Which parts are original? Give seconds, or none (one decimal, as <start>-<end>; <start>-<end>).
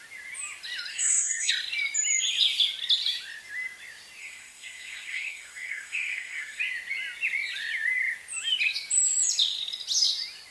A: 0.0-0.9; 1.5-4.2; 6.6-10.5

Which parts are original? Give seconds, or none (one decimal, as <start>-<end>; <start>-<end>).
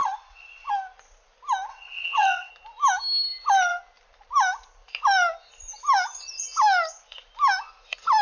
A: 0.7-1.7; 2.5-8.2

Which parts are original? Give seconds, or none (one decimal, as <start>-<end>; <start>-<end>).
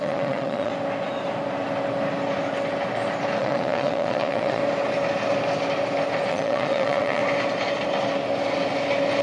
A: 0.7-3.4; 4.6-6.3; 7.2-9.2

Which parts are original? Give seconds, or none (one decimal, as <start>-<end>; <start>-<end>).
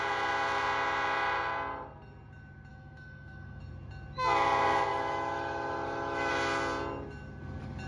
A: 0.0-2.7; 3.6-4.9; 6.3-7.9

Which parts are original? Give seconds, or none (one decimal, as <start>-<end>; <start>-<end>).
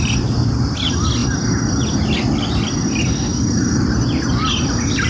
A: 0.0-5.1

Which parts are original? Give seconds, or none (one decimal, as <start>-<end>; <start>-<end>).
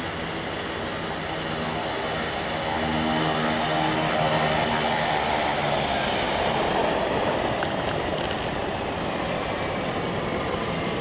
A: 0.0-11.0